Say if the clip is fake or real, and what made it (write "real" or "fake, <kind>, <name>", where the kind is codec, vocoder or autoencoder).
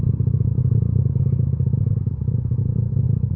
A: real